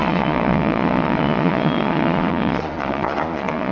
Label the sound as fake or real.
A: fake